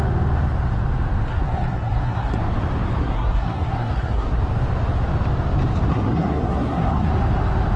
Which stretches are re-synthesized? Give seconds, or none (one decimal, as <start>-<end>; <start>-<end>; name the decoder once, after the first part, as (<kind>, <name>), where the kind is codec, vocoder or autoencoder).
1.3-2.4 (codec, SNAC); 3.0-4.4; 5.9-7.1